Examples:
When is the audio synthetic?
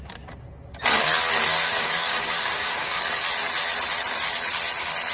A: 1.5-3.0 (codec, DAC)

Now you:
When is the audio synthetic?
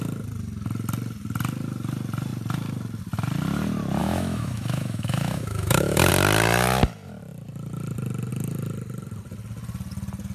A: 4.0-6.1 (autoencoder, DAC-VAE)